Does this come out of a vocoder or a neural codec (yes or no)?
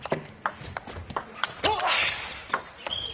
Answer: no